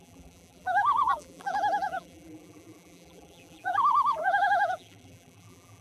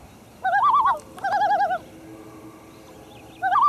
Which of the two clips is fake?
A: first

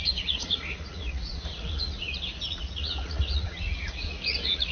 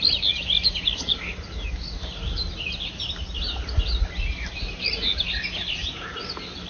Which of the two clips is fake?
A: first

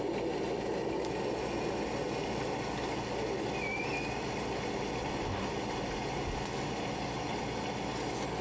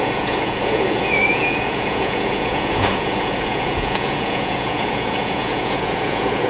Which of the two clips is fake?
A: second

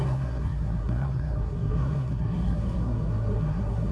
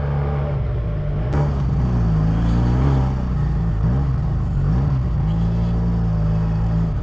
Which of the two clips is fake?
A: first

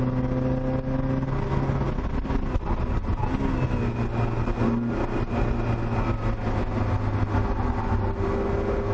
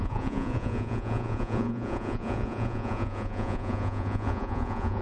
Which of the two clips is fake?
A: second